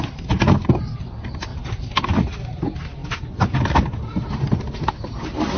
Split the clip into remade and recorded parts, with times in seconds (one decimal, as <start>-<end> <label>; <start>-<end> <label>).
0.0-5.6 recorded